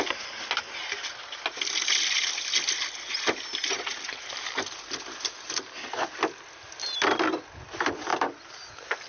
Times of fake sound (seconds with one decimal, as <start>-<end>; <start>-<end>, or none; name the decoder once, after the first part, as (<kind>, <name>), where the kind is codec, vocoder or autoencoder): none